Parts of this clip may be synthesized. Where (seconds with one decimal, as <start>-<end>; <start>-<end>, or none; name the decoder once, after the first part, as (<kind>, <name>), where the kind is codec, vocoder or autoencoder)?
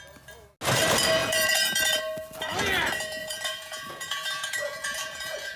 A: 1.2-2.0 (vocoder, Vocos); 3.2-5.6